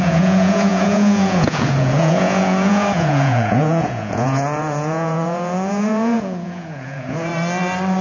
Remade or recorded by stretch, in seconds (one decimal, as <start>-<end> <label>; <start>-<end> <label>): 0.0-7.3 remade; 7.3-8.0 recorded